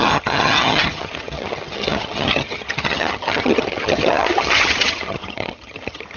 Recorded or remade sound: remade